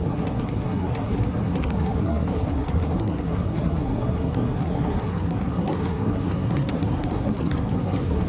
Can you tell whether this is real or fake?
fake